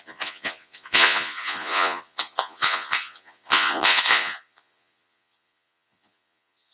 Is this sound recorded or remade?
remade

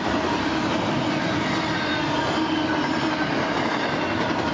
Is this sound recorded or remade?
recorded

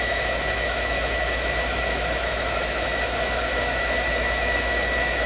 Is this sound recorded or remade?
remade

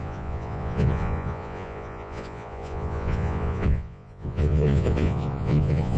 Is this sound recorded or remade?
remade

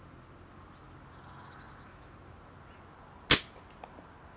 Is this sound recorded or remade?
recorded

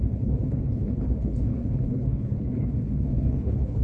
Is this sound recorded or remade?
remade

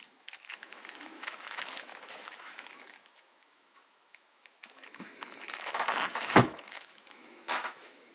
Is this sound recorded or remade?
remade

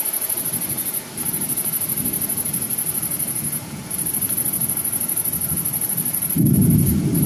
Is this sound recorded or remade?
recorded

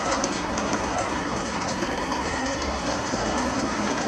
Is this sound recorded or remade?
remade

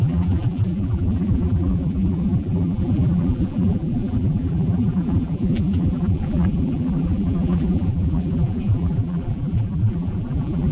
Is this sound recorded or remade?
remade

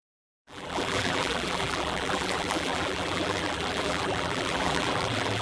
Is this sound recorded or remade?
remade